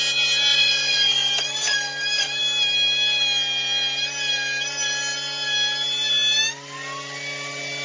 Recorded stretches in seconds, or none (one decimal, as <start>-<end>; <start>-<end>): 0.0-0.5; 1.3-7.8